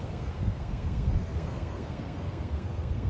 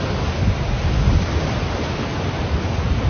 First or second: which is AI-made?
first